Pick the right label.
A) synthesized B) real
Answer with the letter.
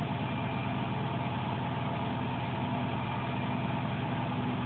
B